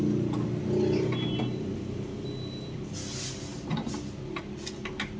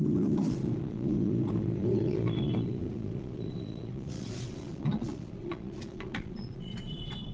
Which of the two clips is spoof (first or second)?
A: second